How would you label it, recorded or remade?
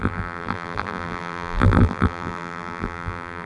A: remade